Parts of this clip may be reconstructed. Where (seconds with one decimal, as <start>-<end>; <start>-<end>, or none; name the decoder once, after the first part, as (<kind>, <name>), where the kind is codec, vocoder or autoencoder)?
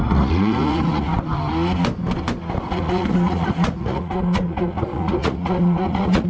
0.0-1.1 (vocoder, Vocos); 2.6-6.3